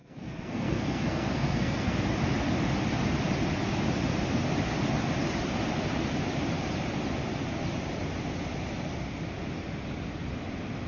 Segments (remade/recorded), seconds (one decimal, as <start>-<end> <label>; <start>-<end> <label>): 0.0-2.0 remade; 2.0-10.9 recorded